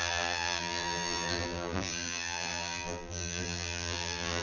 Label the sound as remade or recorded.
remade